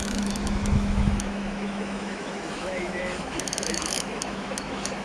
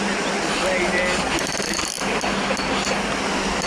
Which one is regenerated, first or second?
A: first